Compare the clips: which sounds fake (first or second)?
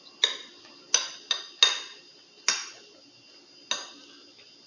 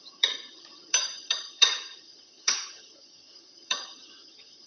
second